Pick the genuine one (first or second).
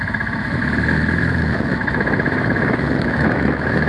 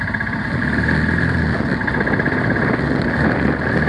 second